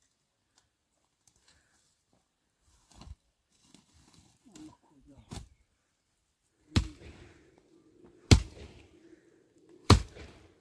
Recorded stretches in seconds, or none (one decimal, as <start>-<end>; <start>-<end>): 6.2-8.8